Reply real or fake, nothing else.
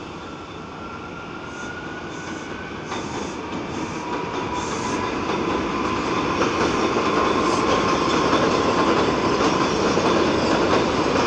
real